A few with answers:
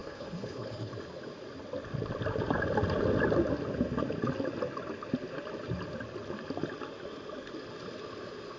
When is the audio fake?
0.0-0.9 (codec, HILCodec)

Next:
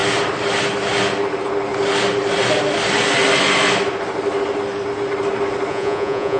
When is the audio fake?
5.7-6.4 (vocoder, Vocos)

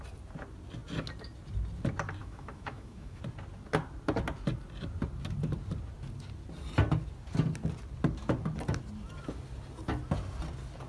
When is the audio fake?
2.2-3.2 (autoencoder, DAC-VAE)

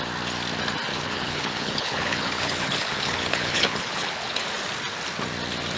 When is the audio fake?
0.9-4.4 (codec, HILCodec)

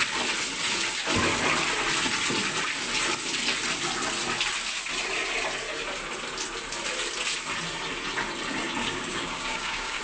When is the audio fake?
8.8-10.0 (codec, DAC)

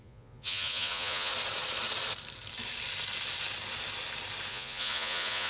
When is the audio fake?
0.0-1.3 (vocoder, Vocos); 4.5-5.5

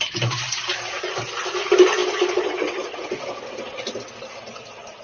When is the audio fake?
none

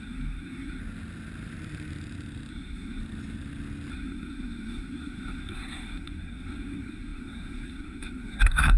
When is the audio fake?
0.0-0.8 (codec, SNAC); 2.5-3.0; 3.9-8.8